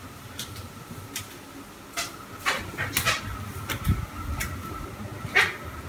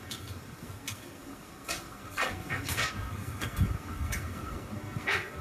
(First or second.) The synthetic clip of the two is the second